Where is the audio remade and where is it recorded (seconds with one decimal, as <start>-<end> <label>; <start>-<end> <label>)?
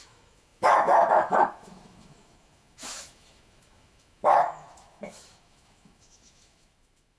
0.0-7.2 remade